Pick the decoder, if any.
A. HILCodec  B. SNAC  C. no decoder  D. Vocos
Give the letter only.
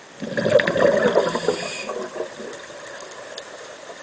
C